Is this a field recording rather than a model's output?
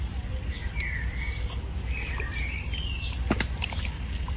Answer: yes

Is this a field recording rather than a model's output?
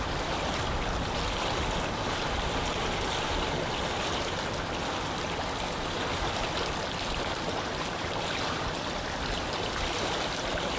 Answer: yes